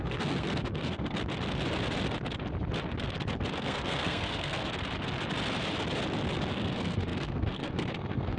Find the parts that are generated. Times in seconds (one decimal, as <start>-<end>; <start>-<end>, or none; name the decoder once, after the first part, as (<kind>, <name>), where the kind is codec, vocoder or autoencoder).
0.0-1.2 (codec, SNAC); 3.6-4.6; 6.5-8.4